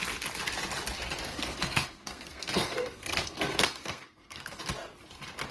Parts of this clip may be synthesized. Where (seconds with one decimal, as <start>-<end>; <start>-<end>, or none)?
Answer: 1.3-4.6